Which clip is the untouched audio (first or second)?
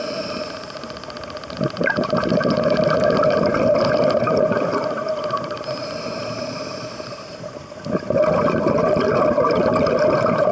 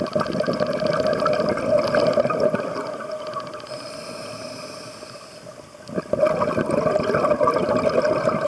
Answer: second